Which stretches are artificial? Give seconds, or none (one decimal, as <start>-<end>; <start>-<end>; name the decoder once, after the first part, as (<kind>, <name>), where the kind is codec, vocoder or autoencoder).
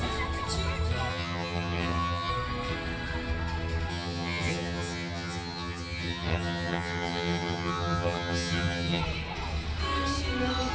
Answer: 1.1-2.3 (vocoder, HiFi-GAN); 3.9-9.0